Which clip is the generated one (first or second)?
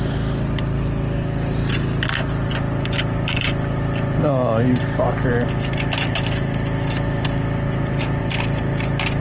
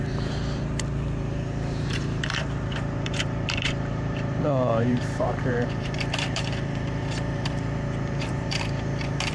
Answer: second